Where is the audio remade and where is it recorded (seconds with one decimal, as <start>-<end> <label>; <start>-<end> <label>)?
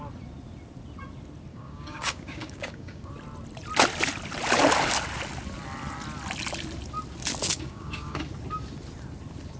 0.0-1.5 recorded; 1.5-3.1 remade; 3.1-7.4 recorded; 7.4-8.2 remade; 8.2-9.6 recorded